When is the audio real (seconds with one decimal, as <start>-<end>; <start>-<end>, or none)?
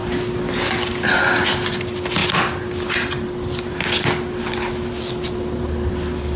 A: 0.0-6.4